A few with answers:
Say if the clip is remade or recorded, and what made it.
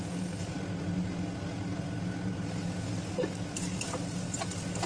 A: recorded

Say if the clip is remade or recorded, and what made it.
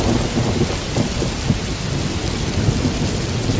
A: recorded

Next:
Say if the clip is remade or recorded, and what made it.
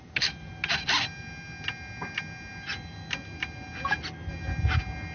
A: recorded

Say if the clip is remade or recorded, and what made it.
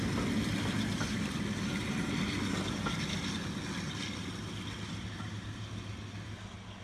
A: recorded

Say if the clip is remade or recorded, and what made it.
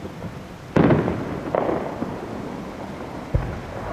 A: recorded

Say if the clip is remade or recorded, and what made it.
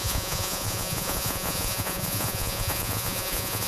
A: remade, vocoder, Vocos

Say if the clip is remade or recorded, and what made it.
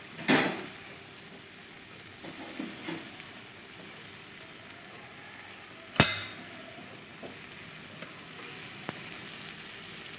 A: recorded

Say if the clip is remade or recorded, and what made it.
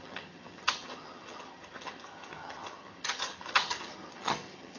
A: remade, vocoder, HiFi-GAN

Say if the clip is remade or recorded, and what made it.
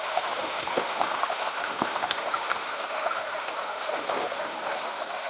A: remade, autoencoder, DAC-VAE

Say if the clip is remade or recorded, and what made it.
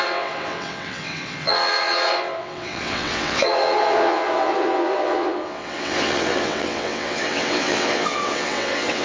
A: remade, vocoder, WaveNeXt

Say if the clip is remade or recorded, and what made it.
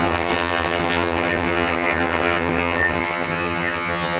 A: remade, vocoder, HiFi-GAN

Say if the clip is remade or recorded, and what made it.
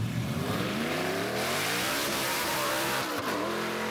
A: remade, vocoder, BigVGAN v2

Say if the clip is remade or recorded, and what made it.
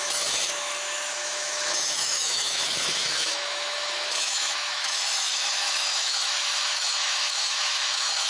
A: remade, autoencoder, DAC-VAE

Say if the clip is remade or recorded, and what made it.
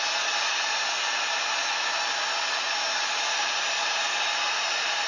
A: recorded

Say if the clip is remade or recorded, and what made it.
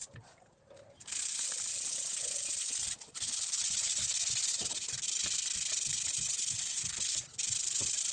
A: remade, vocoder, BigVGAN v2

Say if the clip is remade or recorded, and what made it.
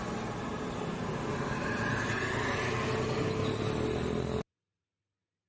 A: recorded